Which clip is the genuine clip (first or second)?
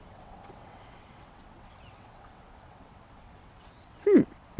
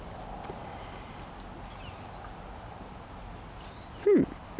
second